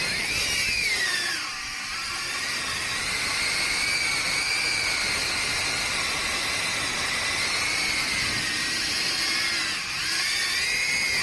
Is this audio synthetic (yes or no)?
yes